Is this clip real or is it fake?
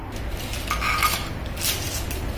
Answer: real